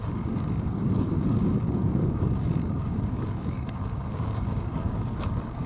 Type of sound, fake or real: fake